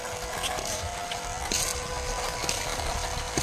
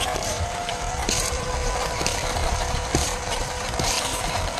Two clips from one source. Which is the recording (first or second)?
first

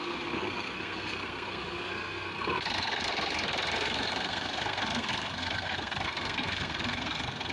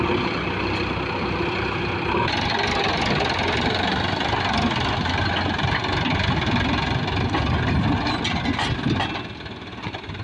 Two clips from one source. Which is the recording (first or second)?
second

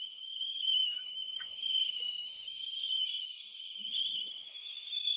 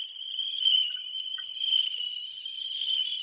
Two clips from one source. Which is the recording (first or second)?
second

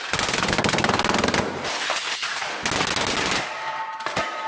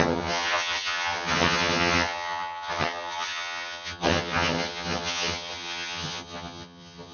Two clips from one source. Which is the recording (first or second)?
first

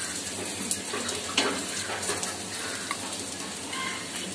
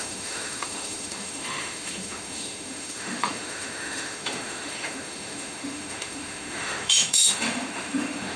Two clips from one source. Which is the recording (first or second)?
first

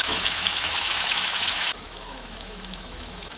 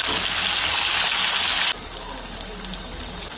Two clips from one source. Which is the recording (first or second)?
second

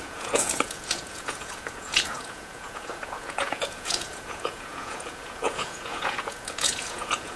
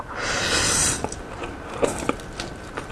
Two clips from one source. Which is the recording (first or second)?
second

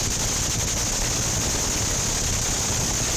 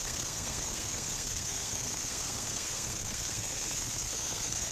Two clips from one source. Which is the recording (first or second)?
first